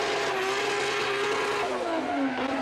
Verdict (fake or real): real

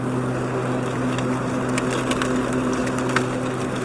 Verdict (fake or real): real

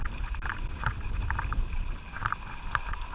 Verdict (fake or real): real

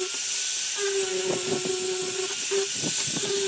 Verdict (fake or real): real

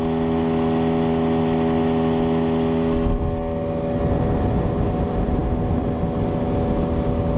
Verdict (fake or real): real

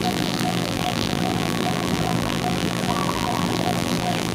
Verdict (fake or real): fake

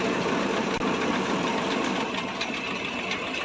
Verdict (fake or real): real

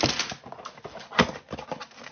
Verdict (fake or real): real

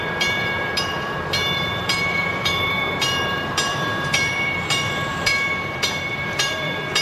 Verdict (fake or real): fake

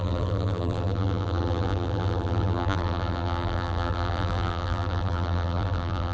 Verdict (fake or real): fake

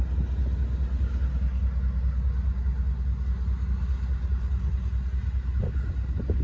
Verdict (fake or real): real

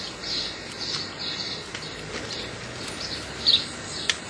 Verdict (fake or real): real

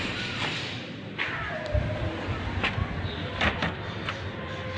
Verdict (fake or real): fake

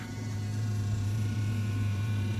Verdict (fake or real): fake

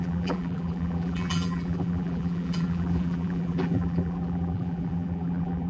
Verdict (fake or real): fake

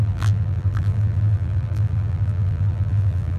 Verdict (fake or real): fake